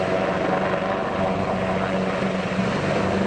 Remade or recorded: recorded